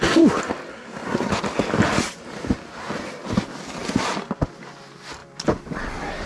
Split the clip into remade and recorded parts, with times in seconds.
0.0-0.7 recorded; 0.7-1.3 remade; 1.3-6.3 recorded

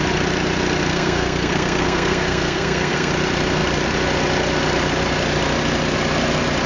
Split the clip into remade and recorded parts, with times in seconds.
0.0-0.9 recorded; 0.9-3.1 remade; 3.1-6.7 recorded

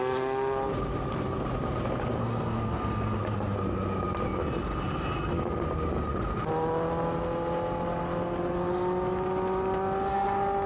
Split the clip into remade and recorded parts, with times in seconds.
0.0-2.2 recorded; 2.2-3.2 remade; 3.2-10.7 recorded

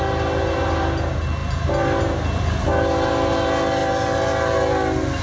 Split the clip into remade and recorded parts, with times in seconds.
0.0-5.2 recorded

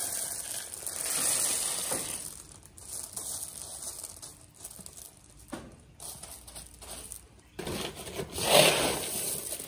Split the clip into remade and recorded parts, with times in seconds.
0.0-9.7 recorded

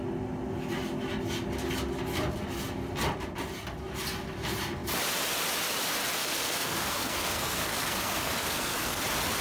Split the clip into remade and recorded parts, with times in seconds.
0.0-6.2 recorded; 6.2-9.0 remade; 9.0-9.4 recorded

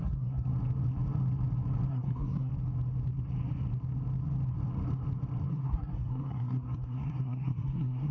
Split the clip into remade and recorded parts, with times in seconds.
0.0-0.5 remade; 0.5-1.9 recorded; 1.9-2.5 remade; 2.5-5.5 recorded; 5.5-8.1 remade